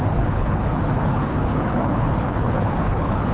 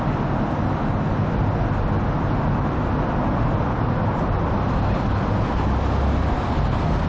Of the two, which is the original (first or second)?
second